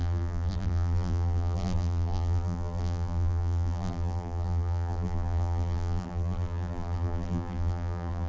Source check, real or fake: fake